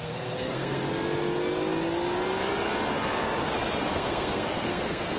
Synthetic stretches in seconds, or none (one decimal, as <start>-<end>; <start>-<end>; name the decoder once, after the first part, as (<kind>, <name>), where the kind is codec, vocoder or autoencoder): 0.0-0.8 (codec, SNAC); 3.9-5.2